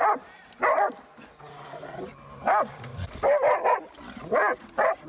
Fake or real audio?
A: real